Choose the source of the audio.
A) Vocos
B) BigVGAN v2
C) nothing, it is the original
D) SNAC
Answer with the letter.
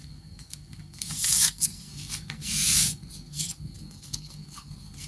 D